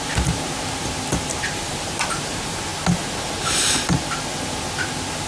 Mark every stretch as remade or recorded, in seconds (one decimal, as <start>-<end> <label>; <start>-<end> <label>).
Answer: 0.0-2.7 remade; 2.7-5.3 recorded